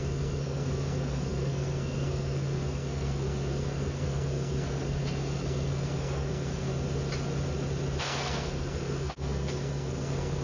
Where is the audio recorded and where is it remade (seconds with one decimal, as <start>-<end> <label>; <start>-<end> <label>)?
0.0-6.7 remade; 6.7-8.0 recorded; 8.0-10.4 remade